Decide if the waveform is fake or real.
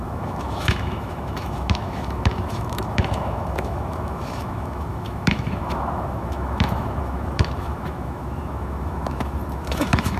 fake